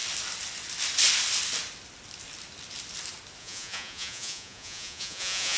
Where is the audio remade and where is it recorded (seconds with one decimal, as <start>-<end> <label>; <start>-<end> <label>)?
0.0-3.4 recorded; 3.4-5.6 remade